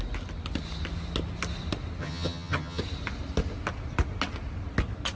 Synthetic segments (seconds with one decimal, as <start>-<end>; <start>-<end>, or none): 2.0-2.8